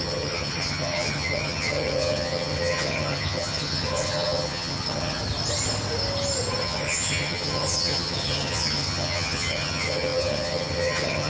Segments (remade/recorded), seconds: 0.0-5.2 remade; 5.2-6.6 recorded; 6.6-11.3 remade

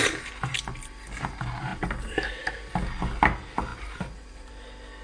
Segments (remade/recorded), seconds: 0.0-3.7 recorded; 3.7-4.5 remade; 4.5-5.0 recorded

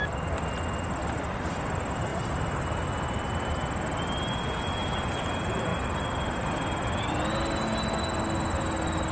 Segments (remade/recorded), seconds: 0.0-1.0 recorded; 1.0-1.7 remade; 1.7-9.1 recorded

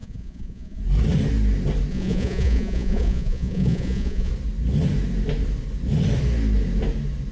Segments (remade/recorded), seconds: 0.0-0.8 remade; 0.8-1.9 recorded; 1.9-4.3 remade; 4.3-7.3 recorded